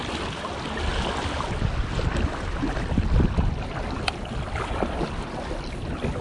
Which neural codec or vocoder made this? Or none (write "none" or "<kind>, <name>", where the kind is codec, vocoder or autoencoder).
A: none